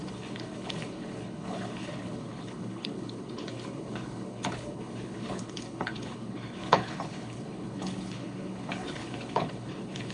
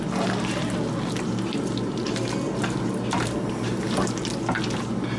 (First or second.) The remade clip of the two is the first